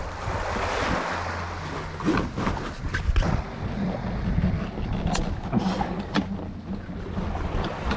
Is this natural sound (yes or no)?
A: yes